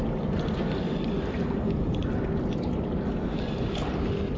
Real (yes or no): yes